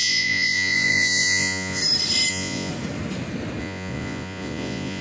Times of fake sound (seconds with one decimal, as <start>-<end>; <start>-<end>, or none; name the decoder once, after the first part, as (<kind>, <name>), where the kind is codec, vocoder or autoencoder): 0.0-1.8 (vocoder, Vocos); 2.3-2.7; 3.6-5.0